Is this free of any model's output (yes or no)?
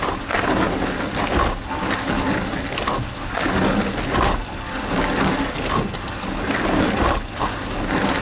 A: yes